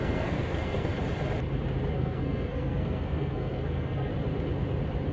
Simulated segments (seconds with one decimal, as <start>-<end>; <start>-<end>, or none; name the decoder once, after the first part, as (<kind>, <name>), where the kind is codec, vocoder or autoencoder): 0.0-0.9 (codec, SNAC); 1.9-4.1